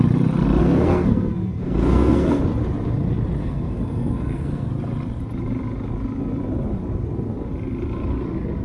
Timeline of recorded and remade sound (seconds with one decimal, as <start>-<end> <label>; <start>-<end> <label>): 0.0-0.6 recorded; 0.6-2.4 remade; 2.4-3.4 recorded; 3.4-4.7 remade; 4.7-8.6 recorded

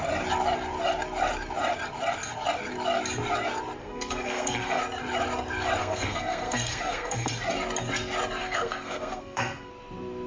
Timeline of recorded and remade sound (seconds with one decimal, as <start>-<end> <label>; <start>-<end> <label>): 0.0-3.8 recorded; 3.8-4.8 remade; 4.8-5.8 recorded; 5.8-7.3 remade; 7.3-8.4 recorded; 8.4-9.7 remade; 9.7-10.3 recorded

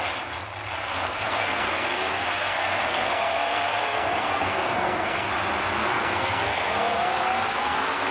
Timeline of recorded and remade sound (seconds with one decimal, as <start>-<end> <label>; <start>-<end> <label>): 0.0-0.8 recorded; 0.8-5.3 remade; 5.3-5.8 recorded; 5.8-8.1 remade

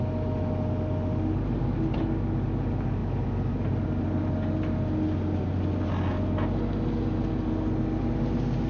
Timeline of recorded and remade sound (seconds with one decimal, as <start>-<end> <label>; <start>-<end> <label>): 0.0-8.7 recorded

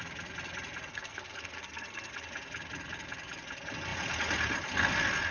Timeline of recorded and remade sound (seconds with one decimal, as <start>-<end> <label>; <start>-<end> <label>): 0.0-0.9 recorded; 0.9-2.1 remade; 2.1-5.3 recorded

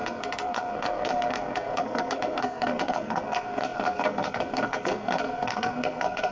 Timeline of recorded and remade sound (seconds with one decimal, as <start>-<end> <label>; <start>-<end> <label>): 0.0-6.3 remade

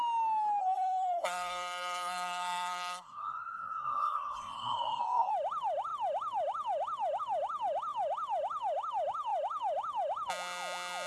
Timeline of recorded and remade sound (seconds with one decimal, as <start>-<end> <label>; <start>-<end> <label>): 0.0-0.6 recorded; 0.6-5.3 remade; 5.3-11.1 recorded